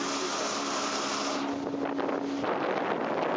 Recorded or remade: recorded